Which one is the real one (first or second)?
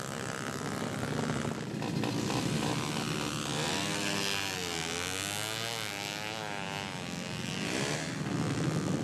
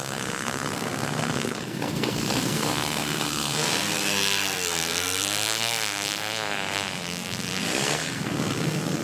first